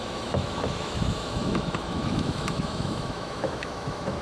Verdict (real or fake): fake